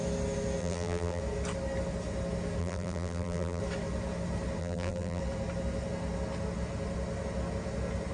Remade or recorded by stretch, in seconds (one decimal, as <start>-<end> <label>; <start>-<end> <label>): 0.0-0.6 recorded; 0.6-1.2 remade; 1.2-2.6 recorded; 2.6-3.6 remade; 3.6-4.6 recorded; 4.6-5.2 remade; 5.2-8.1 recorded